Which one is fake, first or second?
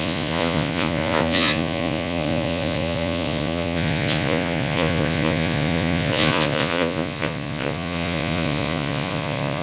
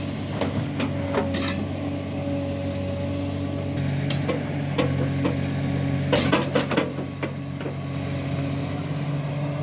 first